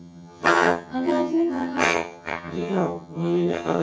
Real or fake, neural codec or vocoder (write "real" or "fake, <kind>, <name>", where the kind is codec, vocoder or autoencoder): fake, vocoder, HiFi-GAN